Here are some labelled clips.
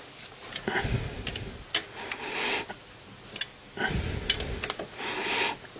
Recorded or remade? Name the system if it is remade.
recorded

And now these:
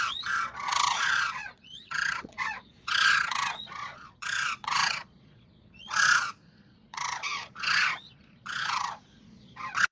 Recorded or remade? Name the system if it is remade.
remade, vocoder, Vocos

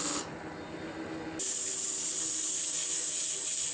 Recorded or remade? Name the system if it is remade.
recorded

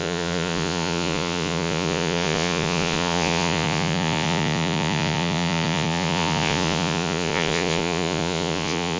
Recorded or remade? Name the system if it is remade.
remade, vocoder, Vocos